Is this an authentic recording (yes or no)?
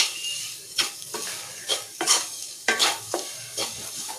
no